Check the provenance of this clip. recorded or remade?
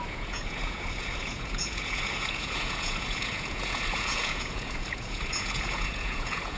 remade